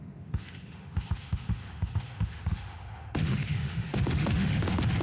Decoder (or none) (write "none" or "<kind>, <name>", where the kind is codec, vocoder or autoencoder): autoencoder, DAC-VAE